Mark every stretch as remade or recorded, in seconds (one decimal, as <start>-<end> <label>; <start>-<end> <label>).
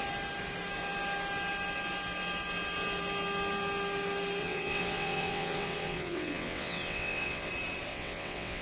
0.0-4.4 recorded; 4.4-7.5 remade; 7.5-7.9 recorded; 7.9-8.6 remade